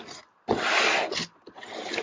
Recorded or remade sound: recorded